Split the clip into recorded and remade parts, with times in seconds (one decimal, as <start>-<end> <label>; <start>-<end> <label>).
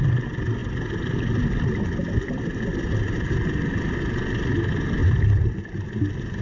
0.0-5.0 recorded; 5.0-5.5 remade; 5.5-6.4 recorded